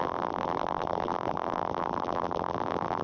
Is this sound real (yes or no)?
no